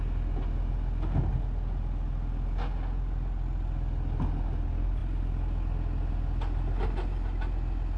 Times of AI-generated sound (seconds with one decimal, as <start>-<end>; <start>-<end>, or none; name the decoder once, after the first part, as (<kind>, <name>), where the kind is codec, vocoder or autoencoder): none